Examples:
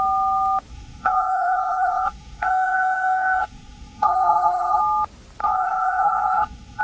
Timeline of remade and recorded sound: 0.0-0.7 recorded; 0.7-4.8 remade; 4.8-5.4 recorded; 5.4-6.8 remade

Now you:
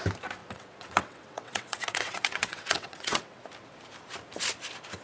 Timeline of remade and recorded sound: 0.0-0.4 recorded; 0.4-3.4 remade; 3.4-5.0 recorded

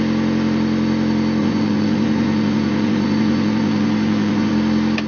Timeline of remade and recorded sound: 0.0-1.4 recorded; 1.4-4.5 remade; 4.5-5.1 recorded